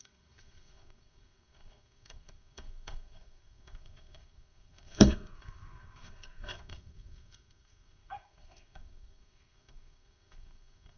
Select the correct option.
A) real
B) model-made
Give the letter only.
B